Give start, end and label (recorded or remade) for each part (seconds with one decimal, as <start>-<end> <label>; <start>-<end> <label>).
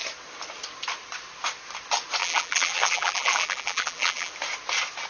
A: 0.0-2.2 recorded; 2.2-4.3 remade; 4.3-5.1 recorded